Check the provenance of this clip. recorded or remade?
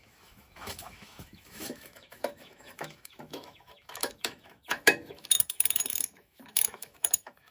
remade